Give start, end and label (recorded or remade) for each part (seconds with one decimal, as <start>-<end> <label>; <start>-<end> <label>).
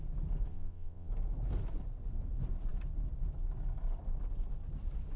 0.0-0.5 recorded; 0.5-1.1 remade; 1.1-5.2 recorded